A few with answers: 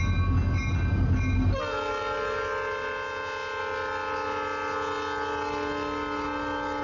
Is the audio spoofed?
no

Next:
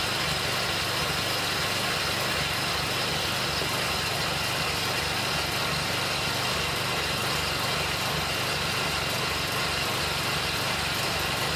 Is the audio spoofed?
no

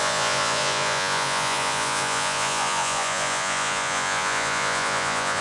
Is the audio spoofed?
yes